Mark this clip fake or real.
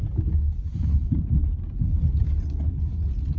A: real